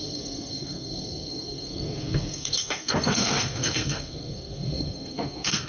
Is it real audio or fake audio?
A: fake